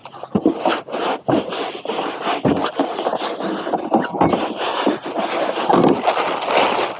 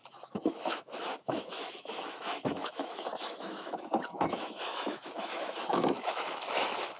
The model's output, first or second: second